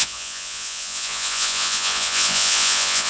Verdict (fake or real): fake